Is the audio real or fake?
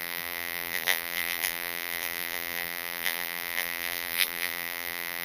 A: fake